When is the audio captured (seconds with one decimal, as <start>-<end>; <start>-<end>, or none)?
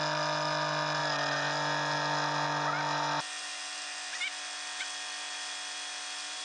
0.0-6.4